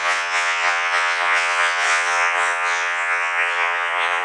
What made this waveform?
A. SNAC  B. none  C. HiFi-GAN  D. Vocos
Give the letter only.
D